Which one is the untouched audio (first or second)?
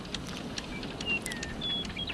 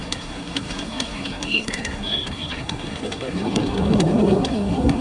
first